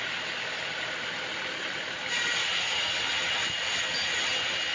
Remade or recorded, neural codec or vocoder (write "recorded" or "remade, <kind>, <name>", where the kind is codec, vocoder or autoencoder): recorded